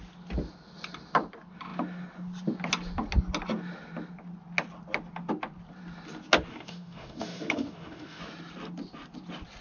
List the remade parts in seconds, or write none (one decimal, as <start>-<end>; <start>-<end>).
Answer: 6.5-8.2